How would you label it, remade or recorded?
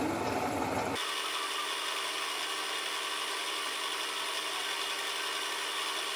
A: recorded